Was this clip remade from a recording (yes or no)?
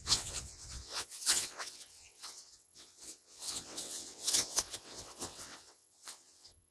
yes